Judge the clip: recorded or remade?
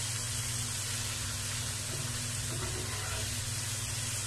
recorded